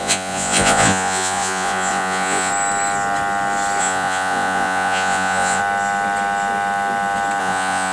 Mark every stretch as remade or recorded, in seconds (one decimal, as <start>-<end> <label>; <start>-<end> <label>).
0.0-2.5 remade; 2.5-3.8 recorded; 3.8-5.6 remade; 5.6-7.4 recorded; 7.4-7.9 remade